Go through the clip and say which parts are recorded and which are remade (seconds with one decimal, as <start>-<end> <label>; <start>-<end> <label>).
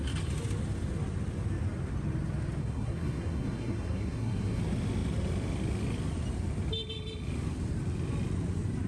0.0-2.6 recorded; 2.6-4.6 remade; 4.6-8.9 recorded